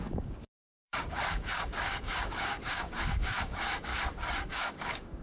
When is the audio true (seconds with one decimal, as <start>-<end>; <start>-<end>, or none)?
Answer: 3.9-4.5